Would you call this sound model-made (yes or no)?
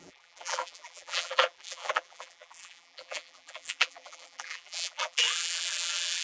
yes